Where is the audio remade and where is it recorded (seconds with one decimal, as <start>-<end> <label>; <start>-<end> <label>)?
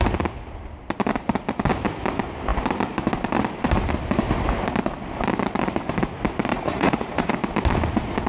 0.0-6.5 recorded; 6.5-7.3 remade; 7.3-8.3 recorded